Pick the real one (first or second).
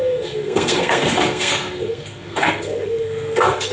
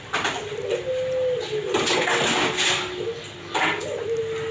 second